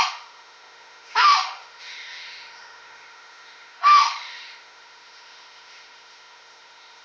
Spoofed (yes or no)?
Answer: yes